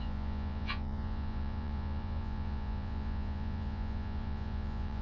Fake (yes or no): yes